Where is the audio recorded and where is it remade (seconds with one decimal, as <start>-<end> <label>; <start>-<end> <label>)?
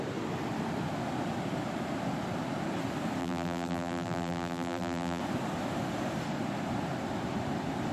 0.0-3.2 recorded; 3.2-5.2 remade; 5.2-7.9 recorded